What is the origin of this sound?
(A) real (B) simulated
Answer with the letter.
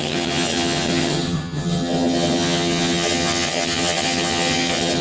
B